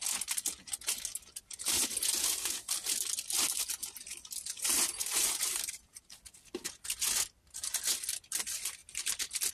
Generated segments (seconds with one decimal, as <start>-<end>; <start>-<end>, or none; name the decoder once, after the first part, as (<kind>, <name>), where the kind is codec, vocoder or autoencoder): 5.0-6.2 (vocoder, BigVGAN v2)